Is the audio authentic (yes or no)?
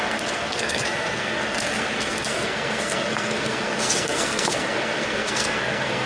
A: no